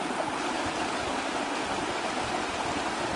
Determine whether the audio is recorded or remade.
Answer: recorded